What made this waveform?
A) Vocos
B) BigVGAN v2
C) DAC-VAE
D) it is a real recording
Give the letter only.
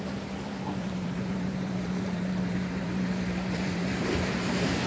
B